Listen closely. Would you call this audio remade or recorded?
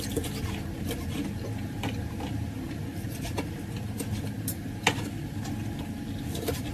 recorded